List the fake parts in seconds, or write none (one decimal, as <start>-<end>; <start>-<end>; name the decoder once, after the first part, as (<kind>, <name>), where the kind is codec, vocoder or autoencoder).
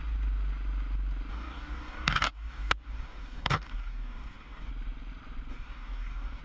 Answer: 1.3-4.7 (codec, DAC); 5.5-6.4